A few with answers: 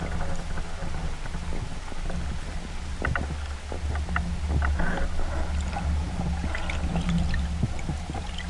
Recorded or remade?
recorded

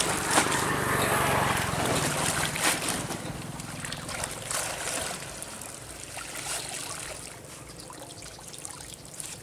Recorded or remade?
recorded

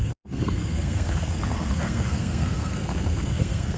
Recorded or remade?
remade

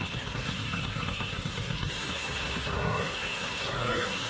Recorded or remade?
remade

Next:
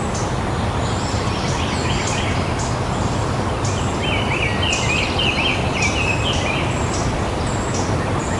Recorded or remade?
recorded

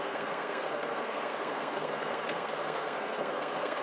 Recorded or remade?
remade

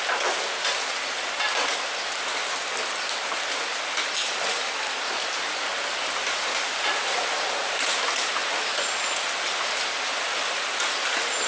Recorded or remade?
recorded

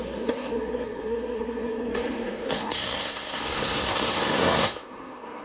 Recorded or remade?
remade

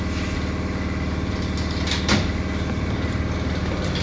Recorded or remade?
recorded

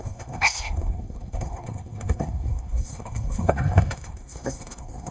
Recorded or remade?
remade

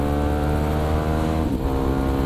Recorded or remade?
recorded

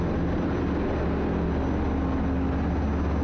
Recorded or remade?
recorded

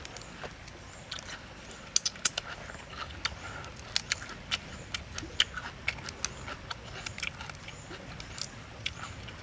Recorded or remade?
recorded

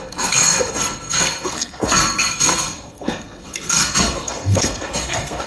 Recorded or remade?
remade